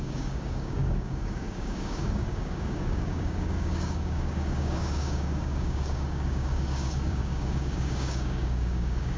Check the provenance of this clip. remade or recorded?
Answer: remade